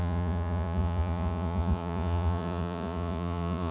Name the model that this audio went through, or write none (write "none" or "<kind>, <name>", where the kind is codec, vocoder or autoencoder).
vocoder, Vocos